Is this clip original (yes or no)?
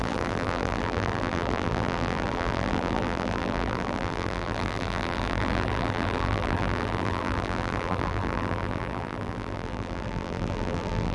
no